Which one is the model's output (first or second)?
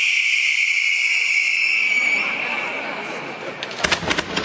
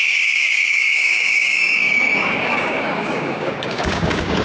second